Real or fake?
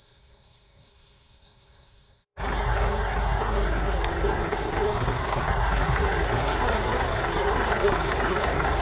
fake